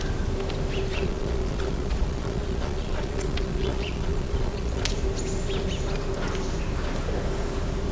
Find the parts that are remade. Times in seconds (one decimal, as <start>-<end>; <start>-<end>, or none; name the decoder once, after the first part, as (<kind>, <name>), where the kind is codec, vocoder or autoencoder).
0.9-4.9 (vocoder, Vocos)